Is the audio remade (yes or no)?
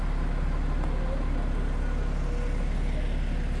no